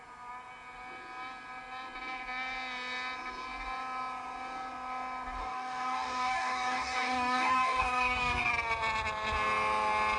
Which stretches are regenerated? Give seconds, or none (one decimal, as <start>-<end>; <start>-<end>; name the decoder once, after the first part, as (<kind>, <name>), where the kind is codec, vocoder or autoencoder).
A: 5.4-8.5 (codec, DAC)